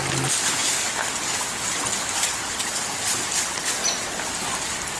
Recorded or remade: recorded